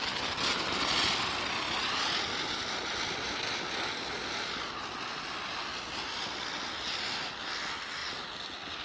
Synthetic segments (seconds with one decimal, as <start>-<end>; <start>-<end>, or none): none